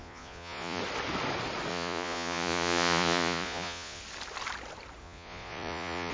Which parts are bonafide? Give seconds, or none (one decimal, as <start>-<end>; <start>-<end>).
0.8-1.7; 4.0-5.0